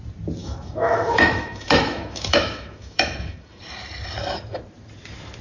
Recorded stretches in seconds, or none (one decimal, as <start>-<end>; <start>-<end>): 0.0-0.4; 3.6-5.4

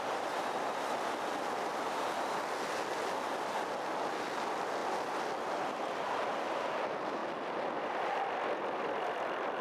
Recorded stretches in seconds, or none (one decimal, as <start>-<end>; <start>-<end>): 0.0-9.6

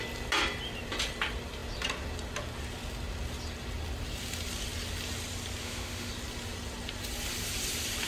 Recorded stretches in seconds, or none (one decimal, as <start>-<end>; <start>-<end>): 0.0-5.6; 6.1-8.1

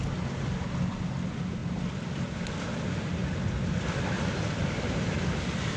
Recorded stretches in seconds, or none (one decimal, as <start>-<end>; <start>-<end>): 0.0-5.8

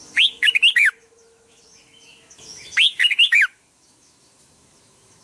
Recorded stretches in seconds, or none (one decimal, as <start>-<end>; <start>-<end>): none

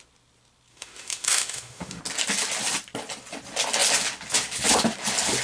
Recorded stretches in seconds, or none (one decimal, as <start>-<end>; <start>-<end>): 0.0-0.7; 2.0-5.4